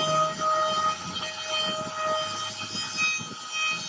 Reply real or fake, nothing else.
real